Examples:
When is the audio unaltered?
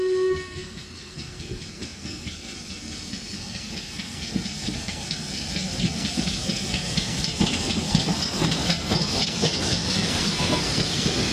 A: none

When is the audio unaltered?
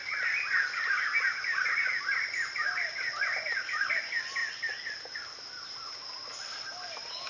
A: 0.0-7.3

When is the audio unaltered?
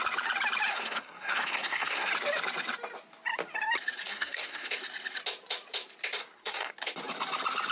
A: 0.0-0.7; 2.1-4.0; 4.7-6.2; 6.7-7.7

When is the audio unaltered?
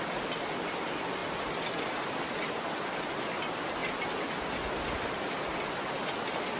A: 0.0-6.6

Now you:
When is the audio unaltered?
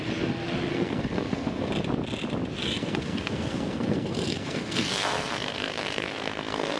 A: 0.0-0.7; 1.7-2.6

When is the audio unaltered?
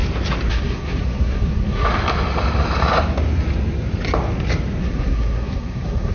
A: 0.0-0.5; 1.9-4.8